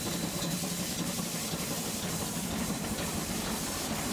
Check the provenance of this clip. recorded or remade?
remade